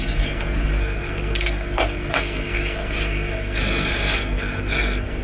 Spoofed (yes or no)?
yes